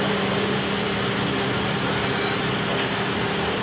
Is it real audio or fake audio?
real